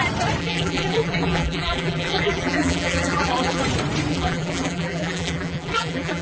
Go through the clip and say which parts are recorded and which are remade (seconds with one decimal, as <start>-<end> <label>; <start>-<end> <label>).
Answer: 0.0-0.4 recorded; 0.4-3.6 remade; 3.6-4.1 recorded; 4.1-6.2 remade